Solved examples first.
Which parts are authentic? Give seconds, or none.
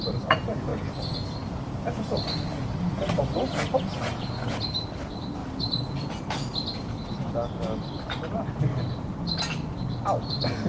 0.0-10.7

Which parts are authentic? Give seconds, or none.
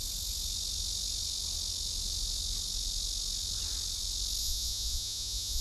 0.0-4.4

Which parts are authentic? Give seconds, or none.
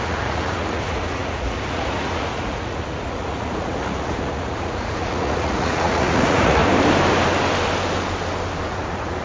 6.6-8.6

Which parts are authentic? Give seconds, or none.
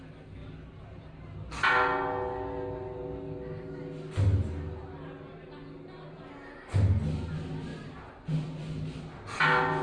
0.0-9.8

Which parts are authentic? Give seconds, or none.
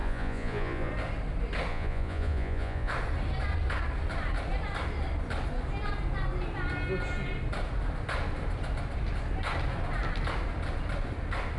0.9-1.7; 2.9-11.6